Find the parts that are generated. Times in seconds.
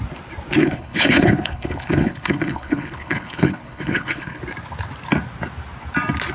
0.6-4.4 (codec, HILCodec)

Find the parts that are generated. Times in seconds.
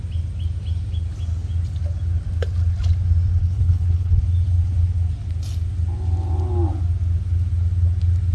3.4-4.2 (codec, HILCodec)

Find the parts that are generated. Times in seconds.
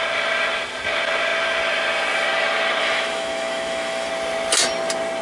2.8-4.1 (autoencoder, DAC-VAE)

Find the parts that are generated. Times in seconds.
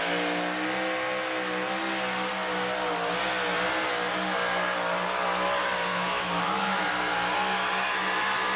5.9-6.9 (autoencoder, DAC-VAE)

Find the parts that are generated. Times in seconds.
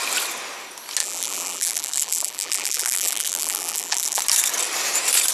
1.0-4.2 (vocoder, BigVGAN v2)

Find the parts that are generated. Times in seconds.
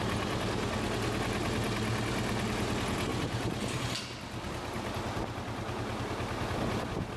3.1-3.8 (vocoder, BigVGAN v2)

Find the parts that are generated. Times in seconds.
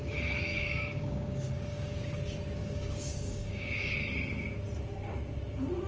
0.5-2.2 (codec, DAC); 2.6-4.1